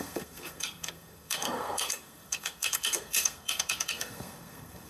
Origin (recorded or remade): remade